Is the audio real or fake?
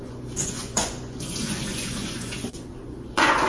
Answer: fake